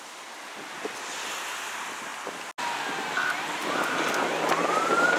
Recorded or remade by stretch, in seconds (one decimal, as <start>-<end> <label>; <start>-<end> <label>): 0.0-4.6 recorded; 4.6-5.2 remade